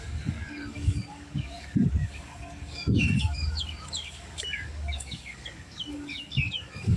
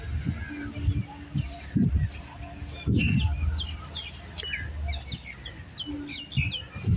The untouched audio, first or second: second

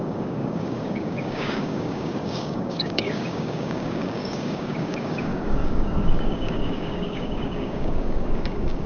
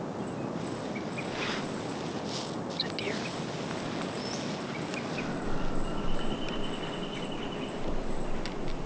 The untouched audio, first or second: second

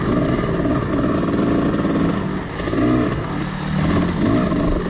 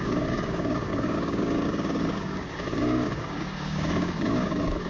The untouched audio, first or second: first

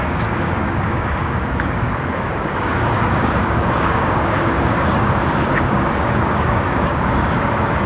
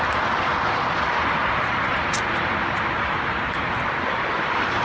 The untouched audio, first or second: second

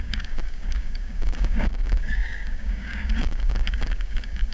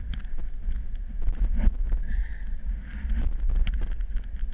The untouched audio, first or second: second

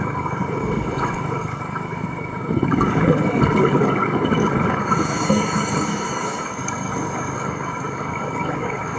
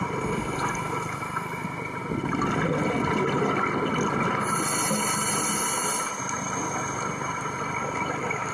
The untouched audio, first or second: second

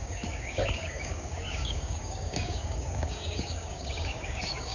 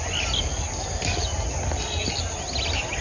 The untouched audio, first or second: second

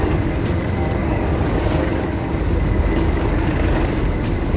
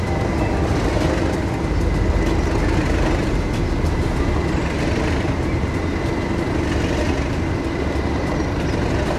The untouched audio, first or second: second